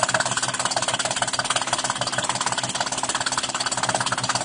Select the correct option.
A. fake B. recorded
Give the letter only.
B